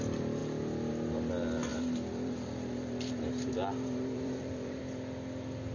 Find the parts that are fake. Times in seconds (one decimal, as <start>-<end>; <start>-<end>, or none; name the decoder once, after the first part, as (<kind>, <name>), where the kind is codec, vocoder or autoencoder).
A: 1.7-4.8 (vocoder, BigVGAN v2)